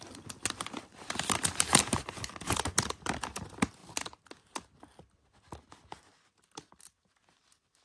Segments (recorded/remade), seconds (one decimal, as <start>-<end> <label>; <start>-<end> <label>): 0.0-7.8 recorded